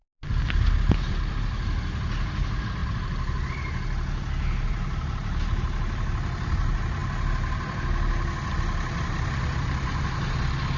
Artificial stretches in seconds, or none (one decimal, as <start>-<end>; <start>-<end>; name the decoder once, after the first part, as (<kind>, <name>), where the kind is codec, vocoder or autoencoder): none